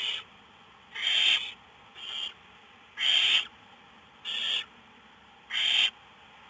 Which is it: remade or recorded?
recorded